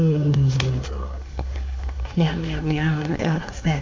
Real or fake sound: fake